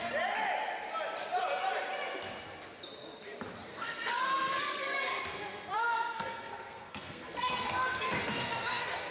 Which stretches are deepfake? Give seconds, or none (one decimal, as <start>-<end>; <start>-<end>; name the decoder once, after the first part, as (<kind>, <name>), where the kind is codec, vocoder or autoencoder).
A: 3.7-9.1 (codec, SNAC)